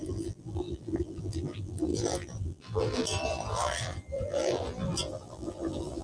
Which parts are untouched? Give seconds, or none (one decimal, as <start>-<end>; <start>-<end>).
none

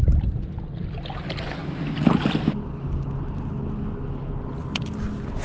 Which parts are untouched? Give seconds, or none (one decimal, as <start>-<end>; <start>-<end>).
0.0-5.4

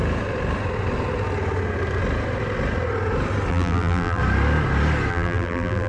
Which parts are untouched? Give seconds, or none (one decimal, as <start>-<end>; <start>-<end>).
0.0-3.5; 4.2-5.1

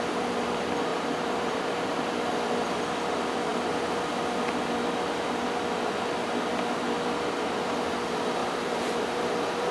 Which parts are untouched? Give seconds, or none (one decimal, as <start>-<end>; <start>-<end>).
0.0-0.9; 1.6-8.4

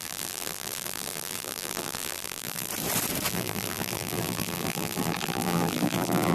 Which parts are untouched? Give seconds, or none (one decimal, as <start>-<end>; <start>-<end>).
2.7-3.3

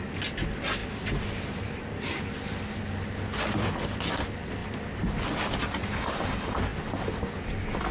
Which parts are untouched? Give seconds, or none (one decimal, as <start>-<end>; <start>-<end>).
0.0-0.8; 1.8-7.9